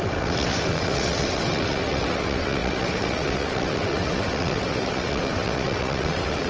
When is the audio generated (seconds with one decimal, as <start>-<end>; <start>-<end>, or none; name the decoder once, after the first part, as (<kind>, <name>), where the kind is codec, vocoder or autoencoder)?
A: 0.0-6.5 (vocoder, WaveNeXt)